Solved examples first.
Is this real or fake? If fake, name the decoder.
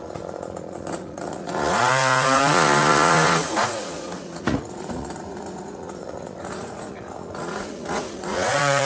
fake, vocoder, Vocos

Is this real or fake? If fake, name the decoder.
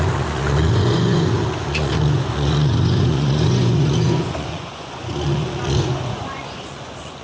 fake, vocoder, Vocos